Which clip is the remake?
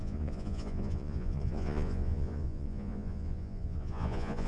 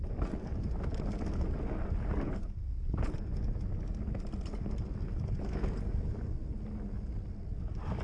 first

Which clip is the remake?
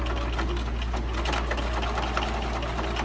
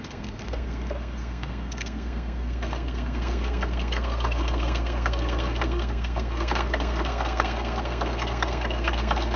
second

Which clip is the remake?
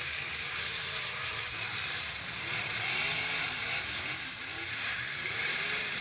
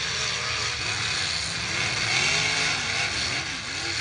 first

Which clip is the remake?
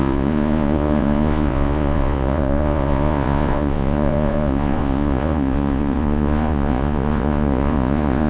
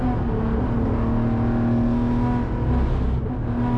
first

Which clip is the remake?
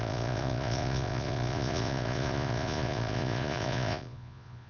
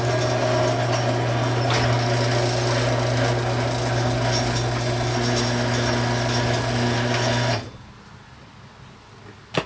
first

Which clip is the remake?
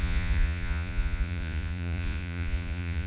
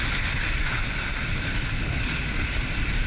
first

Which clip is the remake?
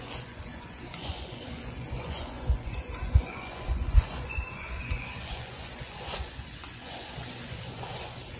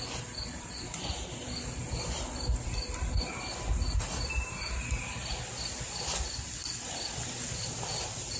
first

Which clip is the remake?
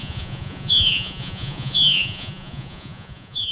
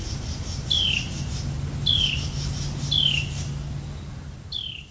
first